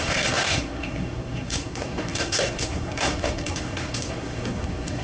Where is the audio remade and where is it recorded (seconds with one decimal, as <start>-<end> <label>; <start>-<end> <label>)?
0.0-5.0 remade